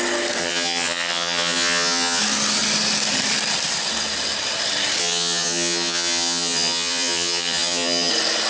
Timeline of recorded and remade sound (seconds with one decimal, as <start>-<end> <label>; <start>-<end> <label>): 0.0-0.4 recorded; 0.4-2.2 remade; 2.2-5.0 recorded; 5.0-8.1 remade; 8.1-8.5 recorded